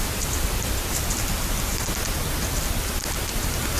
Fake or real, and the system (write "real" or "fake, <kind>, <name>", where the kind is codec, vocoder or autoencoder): real